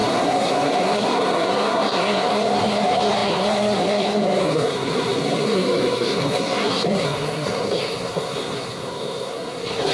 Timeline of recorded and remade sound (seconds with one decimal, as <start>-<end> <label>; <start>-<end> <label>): 0.0-9.9 remade